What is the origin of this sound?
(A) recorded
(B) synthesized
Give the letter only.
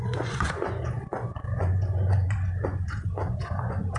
B